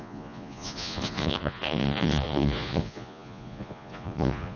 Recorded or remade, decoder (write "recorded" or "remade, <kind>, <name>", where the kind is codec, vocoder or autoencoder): remade, vocoder, Vocos